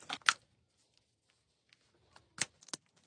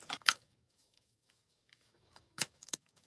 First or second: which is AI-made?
second